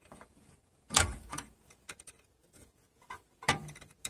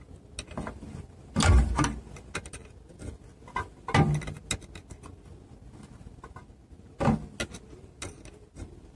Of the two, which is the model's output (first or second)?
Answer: first